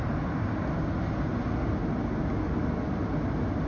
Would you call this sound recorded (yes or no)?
yes